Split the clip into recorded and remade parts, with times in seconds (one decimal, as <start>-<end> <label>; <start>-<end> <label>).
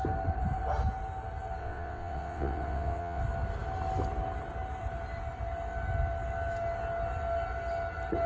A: 0.0-1.6 recorded; 1.6-3.2 remade; 3.2-8.3 recorded